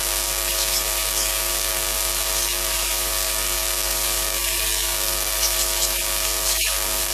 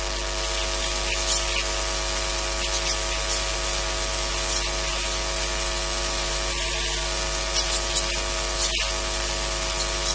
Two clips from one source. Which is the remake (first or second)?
first